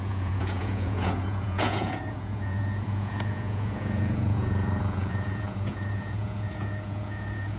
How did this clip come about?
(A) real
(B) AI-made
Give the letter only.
B